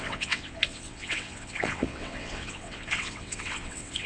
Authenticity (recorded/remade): remade